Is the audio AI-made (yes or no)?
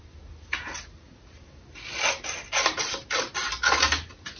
no